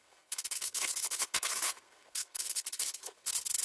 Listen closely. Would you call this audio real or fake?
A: fake